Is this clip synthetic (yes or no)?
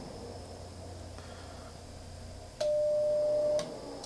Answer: no